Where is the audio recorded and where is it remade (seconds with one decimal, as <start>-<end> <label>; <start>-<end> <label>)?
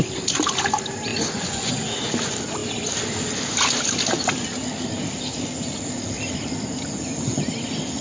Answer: 0.0-1.1 recorded; 1.1-1.7 remade; 1.7-8.0 recorded